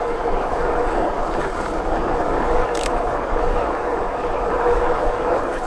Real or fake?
fake